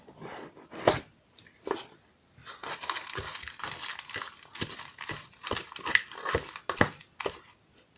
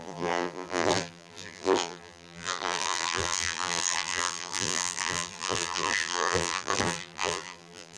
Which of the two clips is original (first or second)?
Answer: first